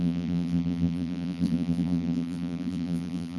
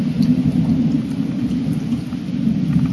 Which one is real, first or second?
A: second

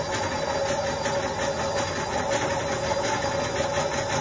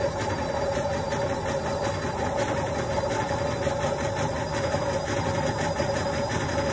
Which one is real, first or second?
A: first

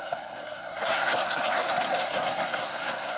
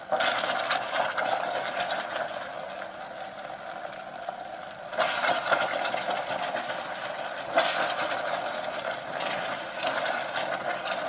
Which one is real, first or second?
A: second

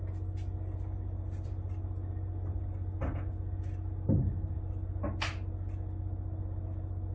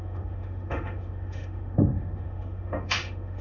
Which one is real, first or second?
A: first